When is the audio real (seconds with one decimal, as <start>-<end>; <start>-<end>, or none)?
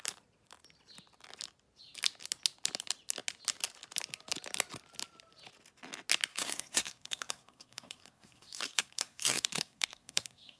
0.0-6.3